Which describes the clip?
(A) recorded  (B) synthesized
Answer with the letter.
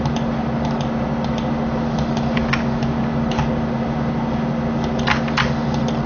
A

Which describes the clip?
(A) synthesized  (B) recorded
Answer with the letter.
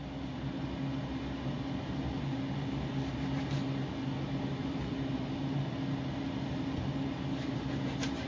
B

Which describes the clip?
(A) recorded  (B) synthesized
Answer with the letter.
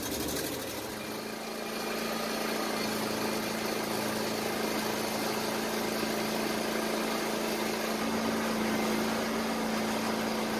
A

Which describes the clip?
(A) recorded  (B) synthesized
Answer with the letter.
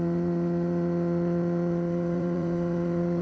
B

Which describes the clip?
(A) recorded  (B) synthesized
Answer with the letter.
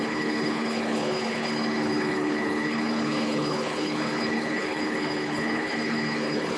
B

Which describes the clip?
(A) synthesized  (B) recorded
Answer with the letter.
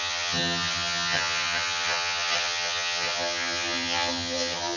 A